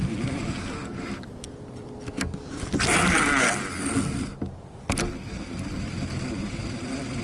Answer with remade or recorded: recorded